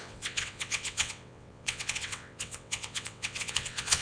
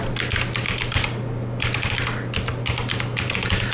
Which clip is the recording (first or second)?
second